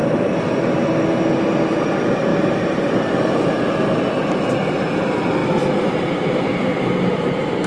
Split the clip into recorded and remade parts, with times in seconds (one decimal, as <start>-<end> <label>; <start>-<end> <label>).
0.0-0.6 remade; 0.6-2.3 recorded; 2.3-4.0 remade; 4.0-5.4 recorded; 5.4-7.7 remade